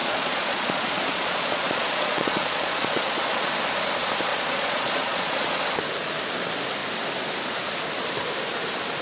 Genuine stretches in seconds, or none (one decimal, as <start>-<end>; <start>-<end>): 3.5-4.3; 5.6-9.0